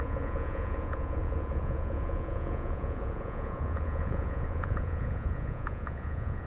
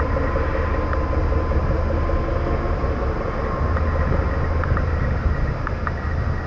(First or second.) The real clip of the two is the second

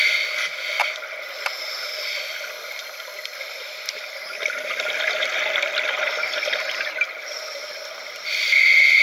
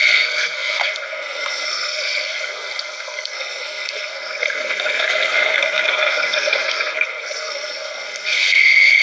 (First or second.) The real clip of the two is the first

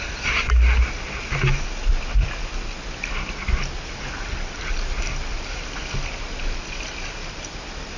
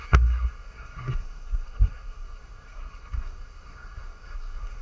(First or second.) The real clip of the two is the first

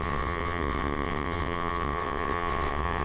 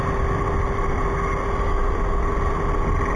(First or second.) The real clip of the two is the second